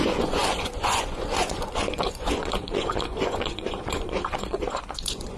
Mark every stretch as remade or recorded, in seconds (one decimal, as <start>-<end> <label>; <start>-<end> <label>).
0.0-5.4 remade